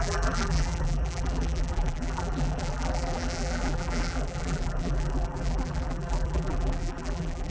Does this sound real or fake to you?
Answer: fake